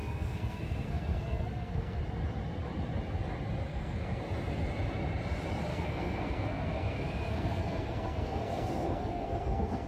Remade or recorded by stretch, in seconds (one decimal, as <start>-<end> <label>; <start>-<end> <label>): 0.0-2.0 remade; 2.0-3.7 recorded; 3.7-4.2 remade; 4.2-5.7 recorded; 5.7-9.9 remade